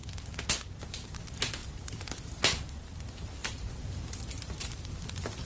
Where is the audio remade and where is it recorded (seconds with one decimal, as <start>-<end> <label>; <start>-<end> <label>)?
0.0-0.9 recorded; 0.9-5.5 remade